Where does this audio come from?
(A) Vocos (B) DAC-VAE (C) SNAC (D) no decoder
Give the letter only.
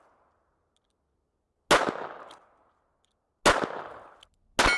D